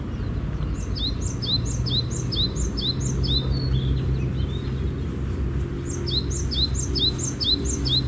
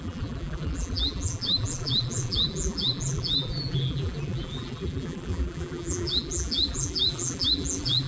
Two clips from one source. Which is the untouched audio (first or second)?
first